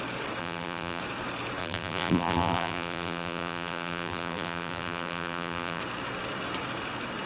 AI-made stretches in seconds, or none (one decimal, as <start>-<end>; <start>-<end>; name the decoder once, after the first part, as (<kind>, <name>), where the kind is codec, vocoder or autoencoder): 0.4-1.0 (vocoder, BigVGAN v2); 1.6-5.8